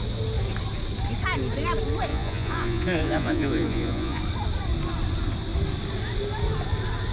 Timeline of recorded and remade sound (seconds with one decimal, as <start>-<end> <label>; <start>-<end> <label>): 0.0-2.1 recorded; 2.1-4.2 remade; 4.2-7.1 recorded